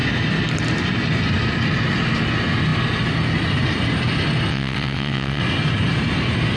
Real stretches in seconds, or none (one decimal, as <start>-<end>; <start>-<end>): 0.0-4.5; 5.4-6.6